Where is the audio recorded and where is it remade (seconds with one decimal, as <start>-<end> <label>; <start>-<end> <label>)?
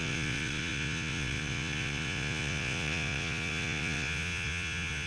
0.0-5.1 remade